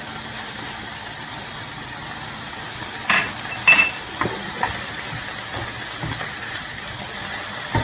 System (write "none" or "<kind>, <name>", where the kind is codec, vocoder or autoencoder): none